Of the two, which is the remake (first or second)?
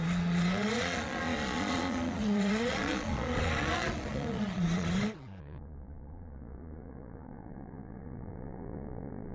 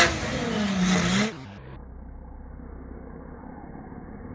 first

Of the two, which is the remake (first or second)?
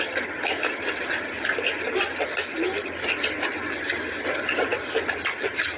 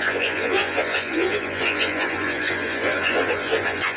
second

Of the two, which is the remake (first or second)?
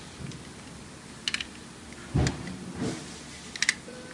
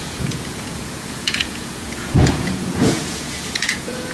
second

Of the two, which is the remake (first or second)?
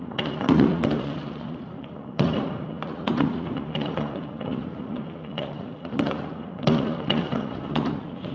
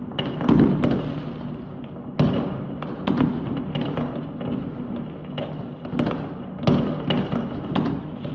first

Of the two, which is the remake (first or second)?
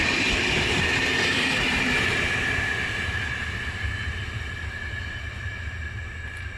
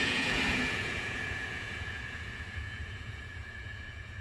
second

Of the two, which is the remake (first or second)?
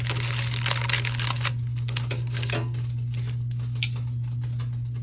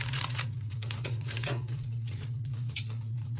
second